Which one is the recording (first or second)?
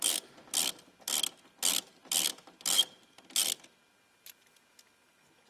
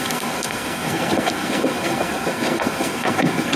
first